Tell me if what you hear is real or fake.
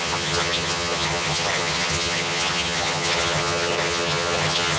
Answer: fake